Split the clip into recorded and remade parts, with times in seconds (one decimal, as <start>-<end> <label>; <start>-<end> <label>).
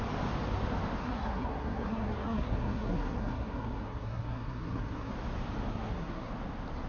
0.0-1.0 recorded; 1.0-5.1 remade; 5.1-5.7 recorded; 5.7-6.3 remade; 6.3-6.9 recorded